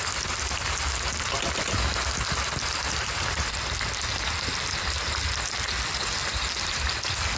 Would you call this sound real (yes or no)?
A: yes